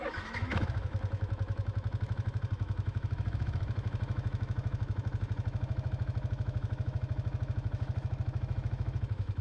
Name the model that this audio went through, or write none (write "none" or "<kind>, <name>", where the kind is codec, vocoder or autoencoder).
autoencoder, DAC-VAE